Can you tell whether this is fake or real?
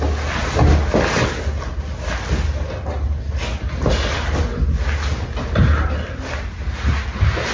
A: real